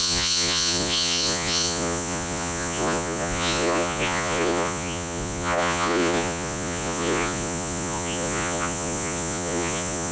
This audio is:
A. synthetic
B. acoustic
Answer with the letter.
A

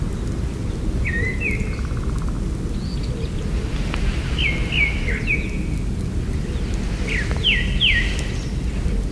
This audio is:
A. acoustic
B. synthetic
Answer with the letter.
A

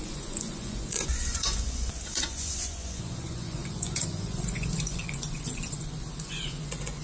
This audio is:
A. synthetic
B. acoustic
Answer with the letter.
A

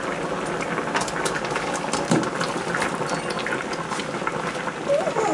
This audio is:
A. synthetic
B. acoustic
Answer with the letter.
B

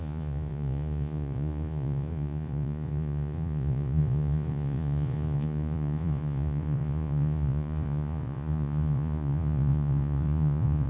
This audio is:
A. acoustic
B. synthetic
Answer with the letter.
B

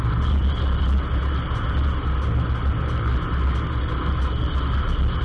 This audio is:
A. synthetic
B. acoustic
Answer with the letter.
B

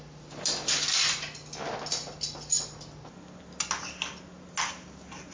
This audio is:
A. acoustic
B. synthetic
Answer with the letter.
A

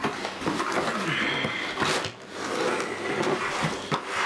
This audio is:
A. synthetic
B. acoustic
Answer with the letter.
B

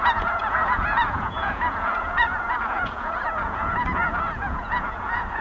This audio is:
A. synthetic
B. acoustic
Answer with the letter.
A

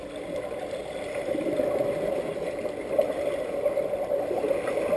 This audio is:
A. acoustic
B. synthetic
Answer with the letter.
A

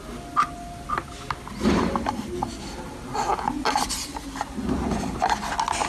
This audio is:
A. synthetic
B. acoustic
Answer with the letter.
B